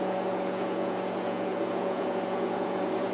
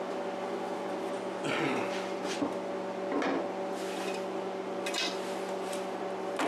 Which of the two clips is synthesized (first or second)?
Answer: first